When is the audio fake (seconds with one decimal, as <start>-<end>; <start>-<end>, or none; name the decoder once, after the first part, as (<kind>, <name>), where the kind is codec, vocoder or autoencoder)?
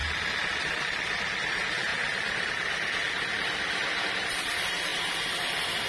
0.6-1.9 (vocoder, BigVGAN v2); 4.1-4.9